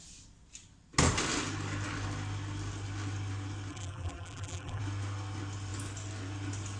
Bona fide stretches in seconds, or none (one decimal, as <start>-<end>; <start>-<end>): 0.0-3.7; 4.8-6.8